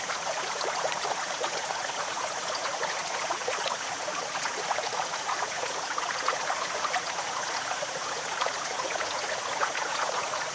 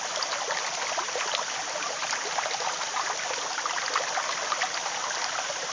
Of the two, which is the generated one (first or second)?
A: first